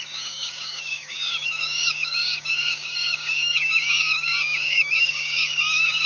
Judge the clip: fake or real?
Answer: fake